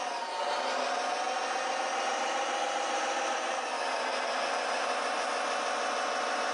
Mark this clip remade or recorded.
recorded